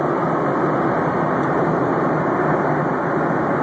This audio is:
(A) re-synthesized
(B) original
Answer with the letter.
B